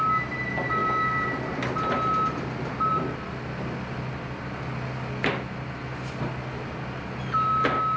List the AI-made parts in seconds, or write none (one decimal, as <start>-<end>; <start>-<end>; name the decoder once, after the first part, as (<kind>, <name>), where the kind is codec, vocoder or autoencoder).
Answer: none